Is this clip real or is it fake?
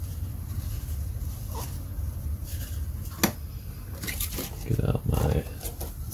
real